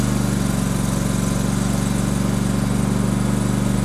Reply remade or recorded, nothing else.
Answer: recorded